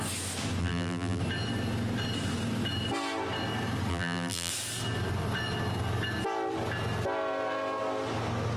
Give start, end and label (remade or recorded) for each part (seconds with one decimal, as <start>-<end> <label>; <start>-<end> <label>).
0.0-0.6 recorded; 0.6-1.2 remade; 1.2-3.9 recorded; 3.9-4.5 remade; 4.5-8.6 recorded